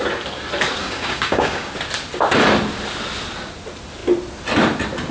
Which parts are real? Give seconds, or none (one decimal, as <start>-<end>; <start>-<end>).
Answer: 0.0-0.8; 1.7-5.1